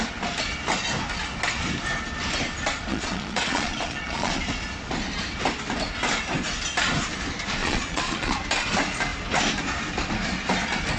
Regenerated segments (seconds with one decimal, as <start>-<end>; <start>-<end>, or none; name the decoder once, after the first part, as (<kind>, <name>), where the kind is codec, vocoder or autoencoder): 2.9-4.4 (vocoder, Vocos); 7.6-8.4